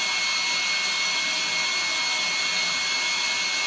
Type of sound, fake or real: real